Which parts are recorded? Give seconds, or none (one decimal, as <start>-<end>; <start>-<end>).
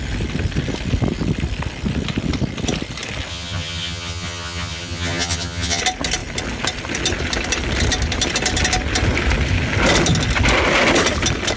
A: 0.0-3.3; 5.8-11.6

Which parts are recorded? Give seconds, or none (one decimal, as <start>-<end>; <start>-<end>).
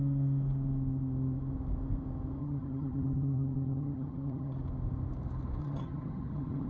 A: 0.0-2.4; 4.6-5.6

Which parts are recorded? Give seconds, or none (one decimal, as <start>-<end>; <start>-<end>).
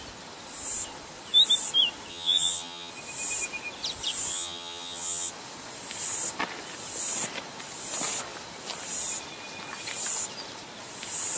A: 0.0-2.1; 2.9-4.3; 5.3-11.4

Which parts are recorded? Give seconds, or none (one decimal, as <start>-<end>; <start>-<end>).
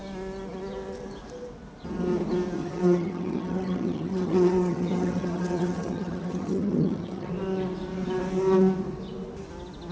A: 0.0-2.6; 7.3-9.9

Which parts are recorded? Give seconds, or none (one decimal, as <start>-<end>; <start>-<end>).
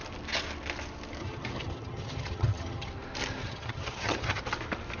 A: 0.0-1.2; 2.9-3.4; 4.4-5.0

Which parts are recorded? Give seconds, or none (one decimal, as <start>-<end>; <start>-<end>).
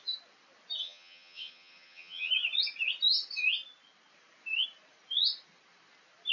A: 0.0-0.8; 2.3-6.3